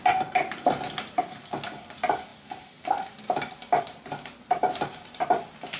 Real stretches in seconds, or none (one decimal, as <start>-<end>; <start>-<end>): 0.0-5.8